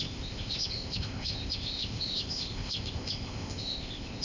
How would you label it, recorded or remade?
remade